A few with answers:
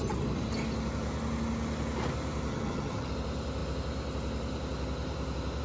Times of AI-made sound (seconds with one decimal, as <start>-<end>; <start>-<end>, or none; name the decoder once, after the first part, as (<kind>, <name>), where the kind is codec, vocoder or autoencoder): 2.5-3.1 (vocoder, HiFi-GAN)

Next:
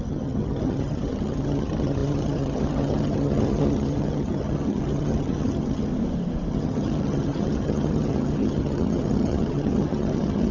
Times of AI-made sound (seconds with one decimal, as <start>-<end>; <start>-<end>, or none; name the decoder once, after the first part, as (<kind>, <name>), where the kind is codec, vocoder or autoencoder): 0.0-5.9 (vocoder, HiFi-GAN); 6.5-10.5

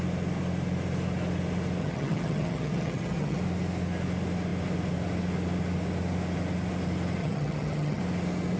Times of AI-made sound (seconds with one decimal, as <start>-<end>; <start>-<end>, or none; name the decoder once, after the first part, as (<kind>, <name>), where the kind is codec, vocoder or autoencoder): 1.8-3.4 (vocoder, HiFi-GAN); 7.2-8.0

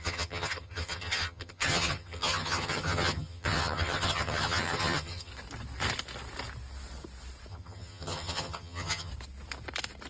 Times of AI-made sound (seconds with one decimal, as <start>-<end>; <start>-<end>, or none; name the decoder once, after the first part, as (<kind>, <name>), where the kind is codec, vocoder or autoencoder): 0.0-5.3 (vocoder, HiFi-GAN); 7.5-9.1

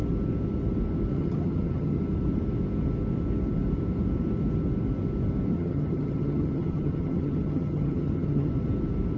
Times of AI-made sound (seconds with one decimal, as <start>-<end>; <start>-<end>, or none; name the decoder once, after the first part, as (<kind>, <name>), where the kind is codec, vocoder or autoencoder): 1.1-2.0 (vocoder, HiFi-GAN); 5.5-8.5

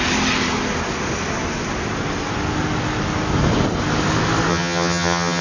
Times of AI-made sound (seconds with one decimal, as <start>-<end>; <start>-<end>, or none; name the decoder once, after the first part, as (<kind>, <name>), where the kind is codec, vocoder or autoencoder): 4.5-5.4 (vocoder, HiFi-GAN)